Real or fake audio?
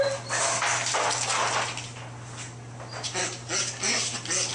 real